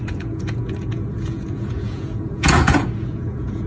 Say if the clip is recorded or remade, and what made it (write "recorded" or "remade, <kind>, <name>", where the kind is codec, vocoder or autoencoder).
remade, vocoder, Vocos